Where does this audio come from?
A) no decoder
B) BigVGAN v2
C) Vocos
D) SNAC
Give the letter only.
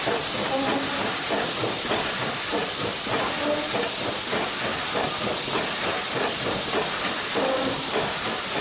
A